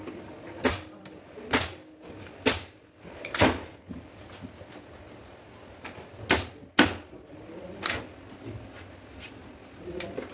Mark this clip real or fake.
real